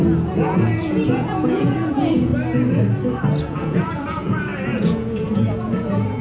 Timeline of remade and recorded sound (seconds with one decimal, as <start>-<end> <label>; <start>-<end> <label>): 0.0-2.3 remade; 2.3-3.4 recorded; 3.4-6.2 remade